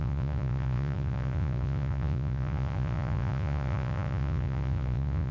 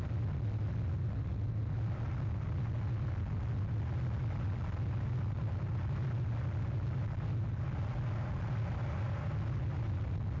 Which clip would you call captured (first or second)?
second